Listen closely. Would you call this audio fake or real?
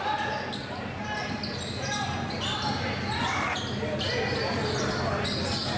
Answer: real